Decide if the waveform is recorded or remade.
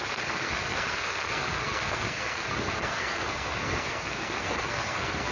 remade